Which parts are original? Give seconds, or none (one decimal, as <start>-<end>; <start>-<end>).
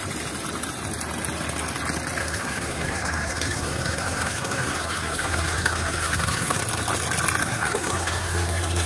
0.0-2.2; 6.6-7.4